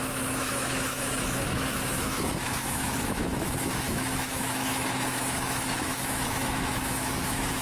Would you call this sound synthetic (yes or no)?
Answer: yes